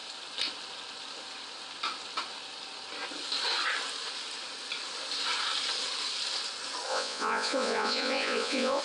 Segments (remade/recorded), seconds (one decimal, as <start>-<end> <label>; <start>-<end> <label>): 0.0-6.9 recorded; 6.9-8.8 remade